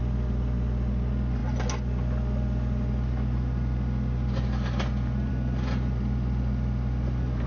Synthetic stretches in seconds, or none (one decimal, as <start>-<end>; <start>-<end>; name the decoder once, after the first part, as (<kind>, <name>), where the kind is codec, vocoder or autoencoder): none